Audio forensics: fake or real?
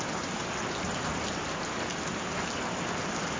real